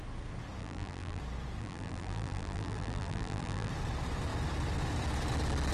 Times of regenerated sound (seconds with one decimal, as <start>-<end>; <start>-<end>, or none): 0.6-1.2; 1.6-3.7